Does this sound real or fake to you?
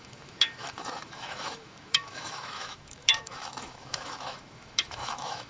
fake